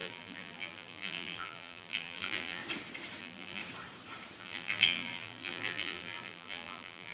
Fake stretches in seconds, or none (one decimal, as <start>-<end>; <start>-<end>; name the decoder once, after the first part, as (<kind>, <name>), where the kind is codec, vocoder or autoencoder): 0.0-2.6 (vocoder, BigVGAN v2); 3.2-3.6; 4.4-7.1